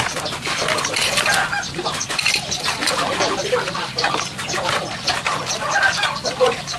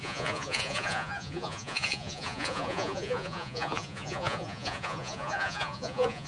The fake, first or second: second